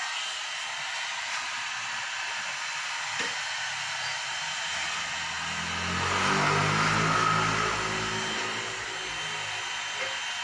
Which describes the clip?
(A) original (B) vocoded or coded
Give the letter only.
A